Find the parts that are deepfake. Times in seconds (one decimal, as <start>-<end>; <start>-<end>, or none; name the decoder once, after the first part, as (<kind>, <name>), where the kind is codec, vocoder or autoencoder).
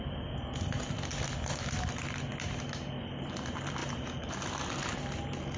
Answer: 3.8-4.3 (vocoder, BigVGAN v2)